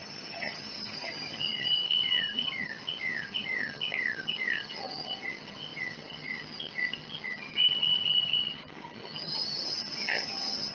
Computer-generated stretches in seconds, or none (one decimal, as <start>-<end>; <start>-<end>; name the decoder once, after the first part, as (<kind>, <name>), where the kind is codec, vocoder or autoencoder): 0.0-10.7 (vocoder, HiFi-GAN)